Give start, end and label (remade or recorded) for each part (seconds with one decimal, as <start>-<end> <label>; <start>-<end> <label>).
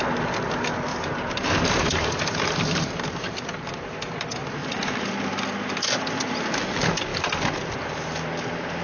0.0-0.9 recorded; 0.9-3.4 remade; 3.4-4.6 recorded; 4.6-5.4 remade; 5.4-8.8 recorded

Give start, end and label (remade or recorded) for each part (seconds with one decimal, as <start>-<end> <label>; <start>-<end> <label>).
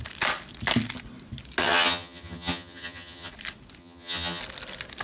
0.0-1.6 recorded; 1.6-3.3 remade; 3.3-3.8 recorded; 3.8-4.4 remade; 4.4-5.0 recorded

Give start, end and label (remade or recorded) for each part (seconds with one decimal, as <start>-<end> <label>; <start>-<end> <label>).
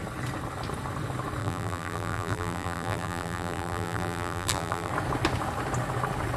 0.0-1.4 recorded; 1.4-4.9 remade; 4.9-6.4 recorded